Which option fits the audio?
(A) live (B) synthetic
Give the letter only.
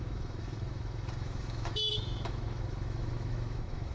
B